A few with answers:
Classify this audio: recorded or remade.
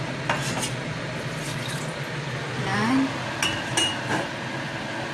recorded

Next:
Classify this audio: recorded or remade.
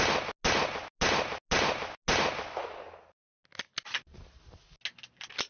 recorded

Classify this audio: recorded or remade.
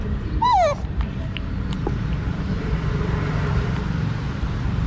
remade